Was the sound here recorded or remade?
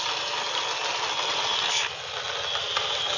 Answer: recorded